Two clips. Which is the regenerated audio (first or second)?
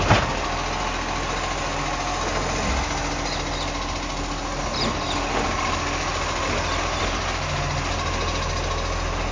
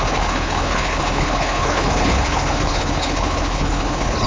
second